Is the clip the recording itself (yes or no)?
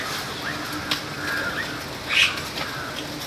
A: yes